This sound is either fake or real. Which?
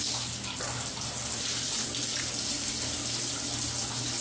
real